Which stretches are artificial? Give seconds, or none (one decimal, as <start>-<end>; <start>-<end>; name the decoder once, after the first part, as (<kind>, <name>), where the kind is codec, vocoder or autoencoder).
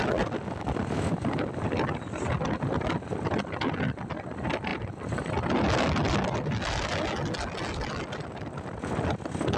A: none